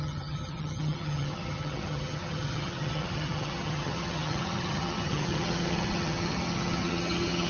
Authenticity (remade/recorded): remade